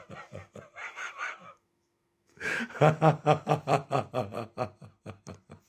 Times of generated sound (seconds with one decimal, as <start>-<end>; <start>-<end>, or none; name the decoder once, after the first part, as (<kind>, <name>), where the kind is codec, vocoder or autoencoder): 1.4-3.0 (autoencoder, DAC-VAE)